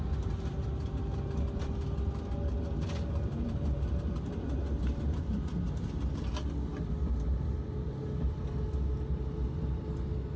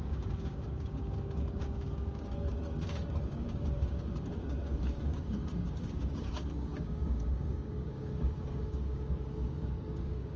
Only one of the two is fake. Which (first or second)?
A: second